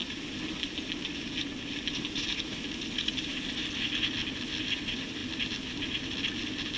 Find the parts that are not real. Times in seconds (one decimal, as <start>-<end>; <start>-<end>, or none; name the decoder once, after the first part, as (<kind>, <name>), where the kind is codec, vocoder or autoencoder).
1.5-3.3 (vocoder, BigVGAN v2); 4.8-6.8